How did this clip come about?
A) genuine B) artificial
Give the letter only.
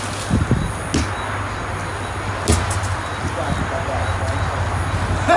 A